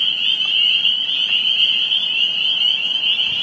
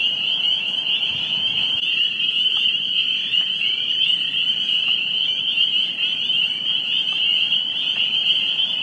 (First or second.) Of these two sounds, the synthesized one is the second